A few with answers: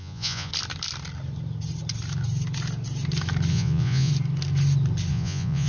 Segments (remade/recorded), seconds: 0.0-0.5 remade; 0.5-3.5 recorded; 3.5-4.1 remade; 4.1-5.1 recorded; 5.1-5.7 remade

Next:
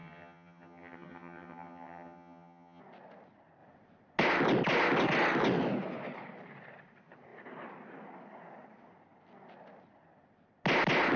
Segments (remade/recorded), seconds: 0.0-2.8 remade; 2.8-11.2 recorded

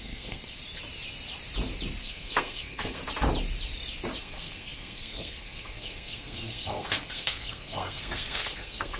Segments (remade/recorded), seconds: 0.0-0.4 remade; 0.4-2.0 recorded; 2.0-3.0 remade; 3.0-4.2 recorded; 4.2-9.0 remade

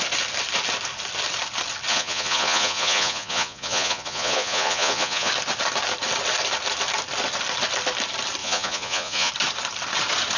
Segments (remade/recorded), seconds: 0.0-1.9 recorded; 1.9-5.3 remade; 5.3-8.4 recorded; 8.4-9.3 remade; 9.3-10.4 recorded

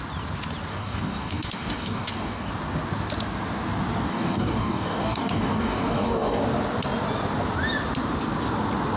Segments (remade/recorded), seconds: 0.0-0.7 recorded; 0.7-2.5 remade; 2.5-4.1 recorded; 4.1-6.4 remade; 6.4-9.0 recorded

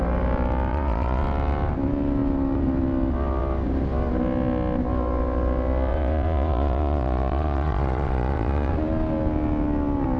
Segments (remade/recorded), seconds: 0.0-0.7 recorded; 0.7-1.2 remade; 1.2-5.9 recorded; 5.9-8.7 remade; 8.7-10.2 recorded